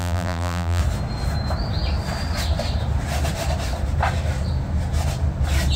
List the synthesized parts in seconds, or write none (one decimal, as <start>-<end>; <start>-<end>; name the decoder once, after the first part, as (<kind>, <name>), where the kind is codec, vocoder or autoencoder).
0.0-0.8 (vocoder, BigVGAN v2)